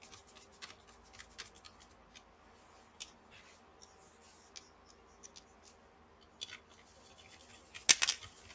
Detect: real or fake real